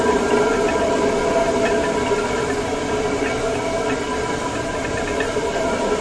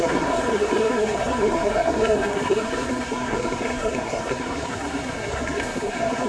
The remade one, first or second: second